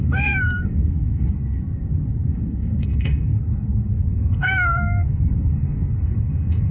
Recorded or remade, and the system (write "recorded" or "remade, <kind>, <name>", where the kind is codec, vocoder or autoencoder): remade, codec, SNAC